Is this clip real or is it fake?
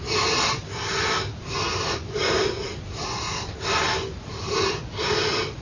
real